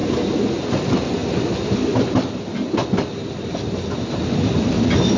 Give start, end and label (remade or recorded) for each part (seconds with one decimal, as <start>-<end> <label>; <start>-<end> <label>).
0.0-5.2 recorded